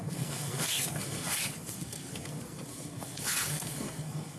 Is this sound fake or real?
fake